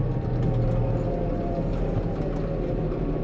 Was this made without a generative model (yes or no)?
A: yes